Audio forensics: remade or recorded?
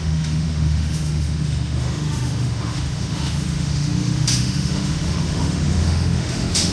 remade